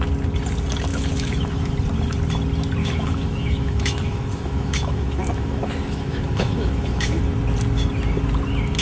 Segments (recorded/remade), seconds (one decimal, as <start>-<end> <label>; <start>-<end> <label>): 0.0-0.9 recorded; 0.9-1.7 remade; 1.7-2.8 recorded; 2.8-7.2 remade; 7.2-8.8 recorded